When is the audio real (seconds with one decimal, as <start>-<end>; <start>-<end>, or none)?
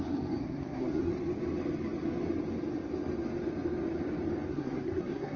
0.0-0.4; 1.1-4.5